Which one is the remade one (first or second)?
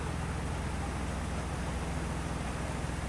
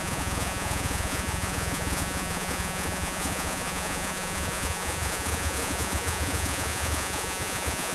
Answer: second